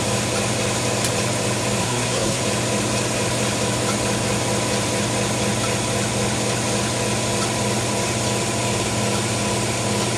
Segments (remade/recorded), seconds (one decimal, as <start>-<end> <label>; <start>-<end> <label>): 0.0-1.8 recorded; 1.8-2.4 remade; 2.4-10.2 recorded